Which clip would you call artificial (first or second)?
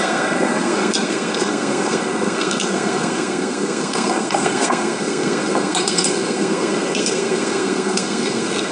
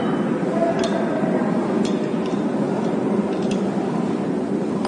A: first